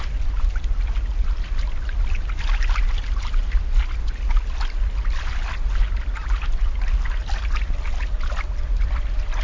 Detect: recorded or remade recorded